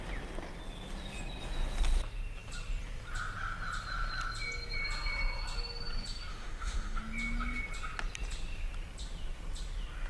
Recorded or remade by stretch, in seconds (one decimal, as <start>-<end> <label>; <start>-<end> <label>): 0.0-6.3 recorded; 6.3-7.0 remade; 7.0-10.1 recorded